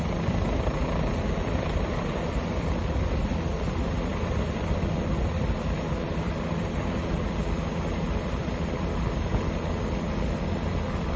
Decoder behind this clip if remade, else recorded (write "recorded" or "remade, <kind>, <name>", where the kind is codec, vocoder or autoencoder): recorded